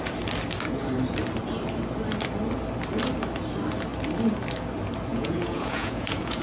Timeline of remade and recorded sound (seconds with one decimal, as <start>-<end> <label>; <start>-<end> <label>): 0.0-5.1 recorded; 5.1-6.4 remade